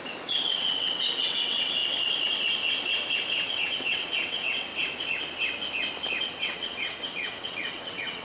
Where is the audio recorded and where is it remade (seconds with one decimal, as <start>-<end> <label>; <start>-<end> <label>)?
0.0-1.8 remade; 1.8-3.3 recorded; 3.3-4.7 remade; 4.7-6.2 recorded; 6.2-8.2 remade